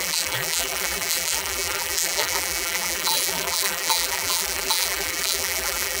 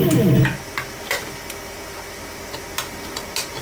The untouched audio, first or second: second